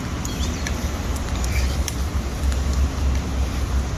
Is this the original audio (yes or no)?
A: yes